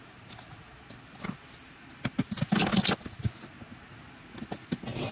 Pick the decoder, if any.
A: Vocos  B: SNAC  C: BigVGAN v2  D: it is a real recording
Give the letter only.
D